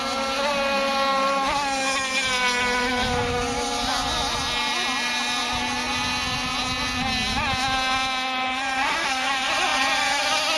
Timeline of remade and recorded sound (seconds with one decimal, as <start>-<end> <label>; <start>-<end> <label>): 0.0-10.6 recorded